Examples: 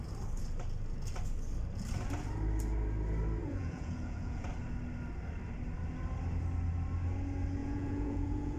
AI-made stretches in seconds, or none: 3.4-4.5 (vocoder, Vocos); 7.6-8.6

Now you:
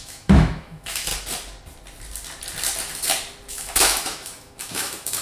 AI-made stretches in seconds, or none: 0.0-1.1 (autoencoder, DAC-VAE); 3.5-5.2